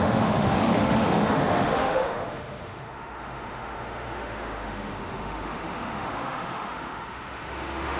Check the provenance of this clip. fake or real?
fake